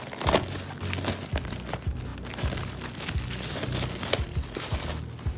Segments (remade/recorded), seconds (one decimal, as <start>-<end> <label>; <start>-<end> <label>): 0.0-5.4 recorded